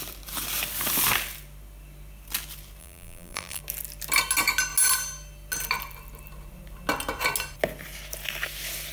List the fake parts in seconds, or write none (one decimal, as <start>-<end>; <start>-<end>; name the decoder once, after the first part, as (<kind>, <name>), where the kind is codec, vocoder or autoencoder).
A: 2.8-3.6 (vocoder, BigVGAN v2)